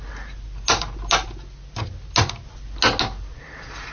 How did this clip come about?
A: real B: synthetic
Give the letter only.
A